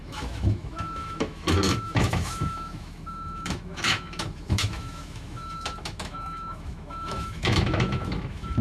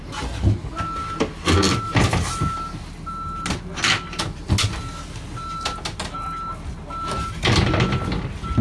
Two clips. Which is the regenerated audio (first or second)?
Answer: first